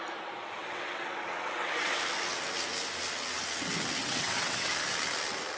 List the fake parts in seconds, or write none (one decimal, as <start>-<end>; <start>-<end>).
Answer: 0.6-2.0; 4.0-4.7

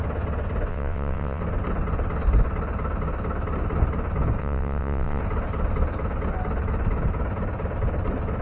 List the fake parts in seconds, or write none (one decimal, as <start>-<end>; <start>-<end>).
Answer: 0.7-1.4; 4.4-5.2

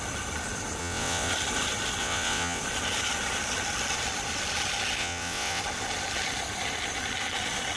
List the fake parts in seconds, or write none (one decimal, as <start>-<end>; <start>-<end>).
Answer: 0.8-1.3; 2.0-2.6; 5.0-5.6

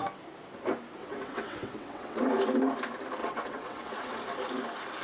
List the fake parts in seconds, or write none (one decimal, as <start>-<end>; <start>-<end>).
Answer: 1.0-2.3; 3.2-4.1

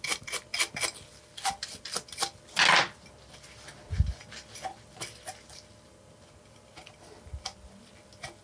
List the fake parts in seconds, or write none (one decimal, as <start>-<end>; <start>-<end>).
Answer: none

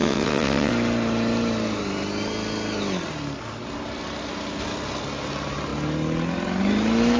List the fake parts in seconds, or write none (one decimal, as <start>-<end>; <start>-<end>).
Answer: 0.0-0.7

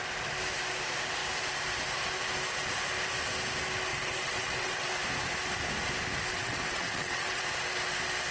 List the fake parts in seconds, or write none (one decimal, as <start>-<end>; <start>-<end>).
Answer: 3.9-4.9; 6.3-7.4

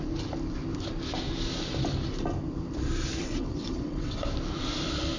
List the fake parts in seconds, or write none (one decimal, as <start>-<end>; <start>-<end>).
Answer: 3.2-4.2